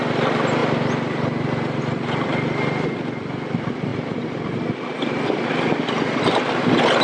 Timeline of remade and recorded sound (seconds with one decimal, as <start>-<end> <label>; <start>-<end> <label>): 0.0-0.6 remade; 0.6-1.8 recorded; 1.8-7.0 remade